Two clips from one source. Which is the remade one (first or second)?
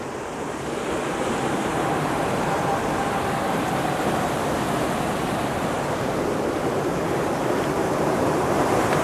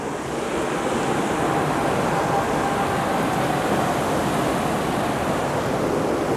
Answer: first